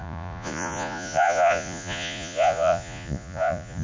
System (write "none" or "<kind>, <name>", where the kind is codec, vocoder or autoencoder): vocoder, Vocos